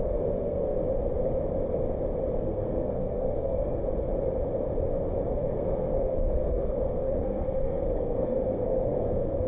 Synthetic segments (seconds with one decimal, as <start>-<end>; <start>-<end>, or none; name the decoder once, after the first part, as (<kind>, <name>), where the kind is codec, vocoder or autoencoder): 0.0-0.8 (codec, SNAC); 2.4-3.8; 5.3-9.5